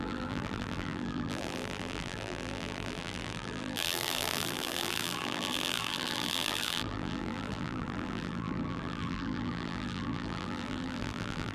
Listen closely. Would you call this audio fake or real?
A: fake